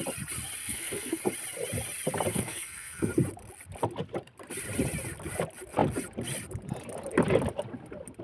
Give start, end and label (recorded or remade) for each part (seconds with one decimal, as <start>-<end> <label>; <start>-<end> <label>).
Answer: 0.0-0.6 recorded; 0.6-1.2 remade; 1.2-2.3 recorded; 2.3-3.1 remade; 3.1-8.2 recorded